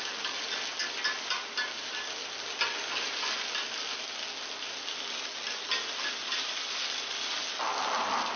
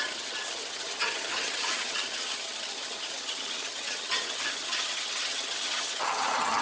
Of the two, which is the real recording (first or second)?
first